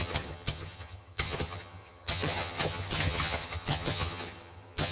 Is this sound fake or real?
fake